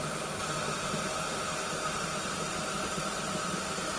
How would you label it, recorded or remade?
recorded